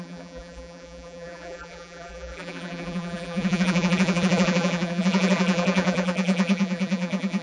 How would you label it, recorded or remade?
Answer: remade